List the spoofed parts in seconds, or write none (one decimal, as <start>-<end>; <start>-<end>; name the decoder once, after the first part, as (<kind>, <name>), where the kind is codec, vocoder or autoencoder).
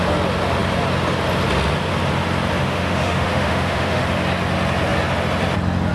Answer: 2.6-4.0 (autoencoder, DAC-VAE)